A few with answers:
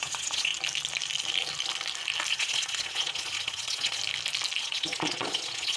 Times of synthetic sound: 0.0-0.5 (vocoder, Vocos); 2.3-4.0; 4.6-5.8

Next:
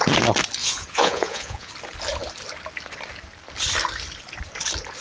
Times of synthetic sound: 0.6-1.7 (vocoder, Vocos)

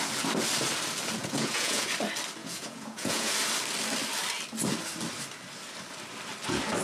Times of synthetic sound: 1.2-1.9 (vocoder, Vocos); 2.4-3.3

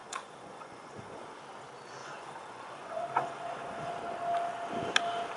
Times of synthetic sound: 0.0-1.4 (vocoder, Vocos); 2.0-3.9

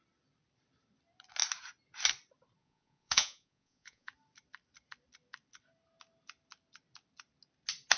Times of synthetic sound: 2.6-4.1 (vocoder, Vocos)

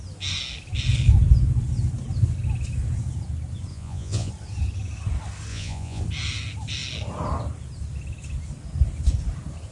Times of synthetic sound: 3.7-4.3 (vocoder, Vocos); 5.5-6.0